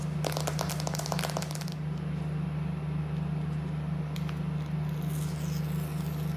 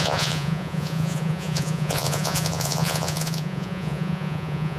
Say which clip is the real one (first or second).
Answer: first